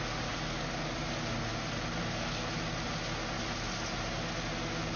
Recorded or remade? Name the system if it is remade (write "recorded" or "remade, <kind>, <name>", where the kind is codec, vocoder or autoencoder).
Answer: recorded